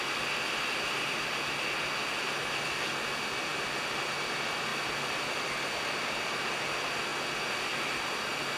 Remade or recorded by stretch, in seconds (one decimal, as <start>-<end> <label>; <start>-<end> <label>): 0.0-4.7 recorded; 4.7-6.4 remade; 6.4-8.6 recorded